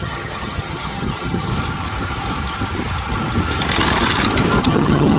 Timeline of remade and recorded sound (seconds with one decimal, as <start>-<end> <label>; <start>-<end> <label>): 0.0-1.5 remade; 1.5-4.6 recorded; 4.6-5.2 remade